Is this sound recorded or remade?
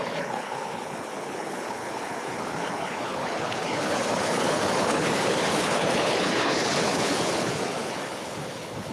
remade